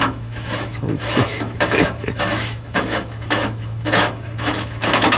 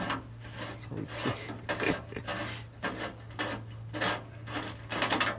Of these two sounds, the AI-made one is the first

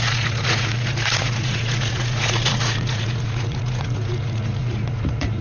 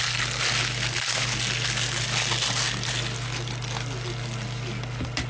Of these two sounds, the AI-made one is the first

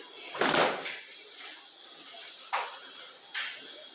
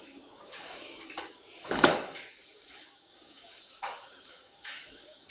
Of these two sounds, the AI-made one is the second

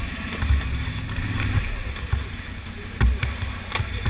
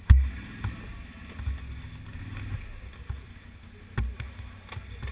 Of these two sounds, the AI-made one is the first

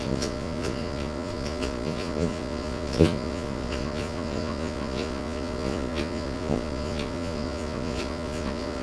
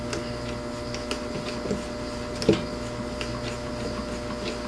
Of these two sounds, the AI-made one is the first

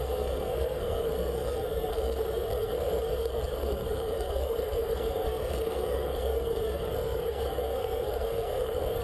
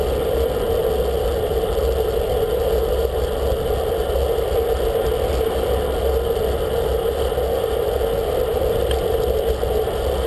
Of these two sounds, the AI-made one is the first